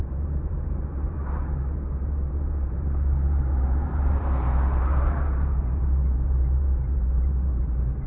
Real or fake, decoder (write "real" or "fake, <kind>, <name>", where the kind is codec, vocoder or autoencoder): fake, vocoder, BigVGAN v2